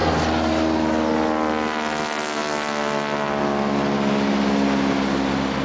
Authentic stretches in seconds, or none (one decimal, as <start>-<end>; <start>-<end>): 0.0-5.6